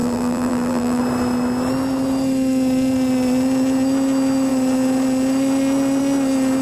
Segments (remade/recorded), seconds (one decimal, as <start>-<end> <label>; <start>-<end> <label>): 0.0-1.0 remade; 1.0-6.6 recorded